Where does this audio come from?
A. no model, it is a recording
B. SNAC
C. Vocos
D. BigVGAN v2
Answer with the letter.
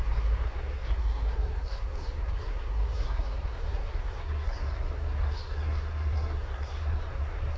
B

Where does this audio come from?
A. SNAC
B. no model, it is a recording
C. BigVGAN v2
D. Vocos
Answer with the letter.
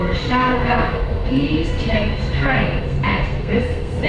A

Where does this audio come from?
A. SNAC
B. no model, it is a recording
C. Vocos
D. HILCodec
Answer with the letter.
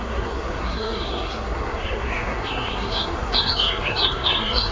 A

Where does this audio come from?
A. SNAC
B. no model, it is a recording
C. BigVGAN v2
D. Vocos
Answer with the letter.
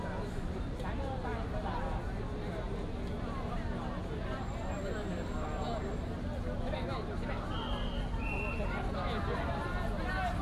B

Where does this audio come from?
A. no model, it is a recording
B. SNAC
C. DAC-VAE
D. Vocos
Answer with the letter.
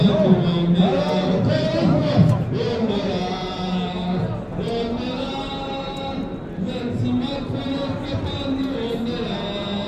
A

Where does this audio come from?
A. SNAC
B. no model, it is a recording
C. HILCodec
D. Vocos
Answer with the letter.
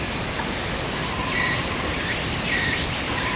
B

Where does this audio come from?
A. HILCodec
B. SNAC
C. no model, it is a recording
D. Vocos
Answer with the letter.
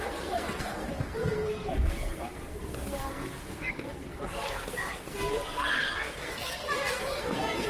B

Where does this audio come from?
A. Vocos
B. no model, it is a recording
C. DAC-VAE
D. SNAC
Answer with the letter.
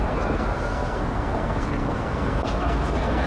D